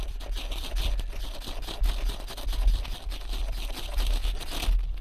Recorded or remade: recorded